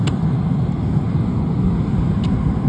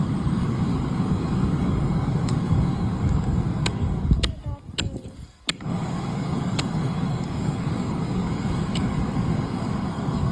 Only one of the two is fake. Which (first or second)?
second